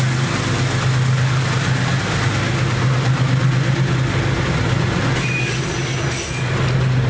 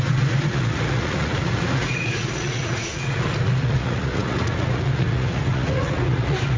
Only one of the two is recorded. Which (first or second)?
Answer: first